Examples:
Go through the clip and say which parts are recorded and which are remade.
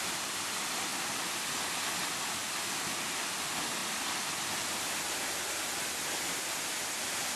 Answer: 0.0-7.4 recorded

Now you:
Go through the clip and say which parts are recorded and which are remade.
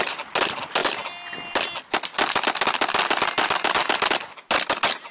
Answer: 0.0-5.1 recorded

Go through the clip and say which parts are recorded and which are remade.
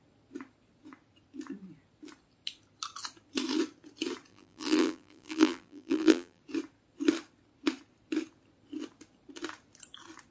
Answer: 0.0-4.3 recorded; 4.3-6.4 remade; 6.4-10.3 recorded